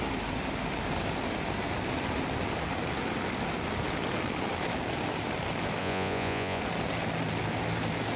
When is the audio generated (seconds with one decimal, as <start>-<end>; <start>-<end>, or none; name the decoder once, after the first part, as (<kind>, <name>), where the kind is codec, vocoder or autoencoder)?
5.8-6.6 (vocoder, Vocos)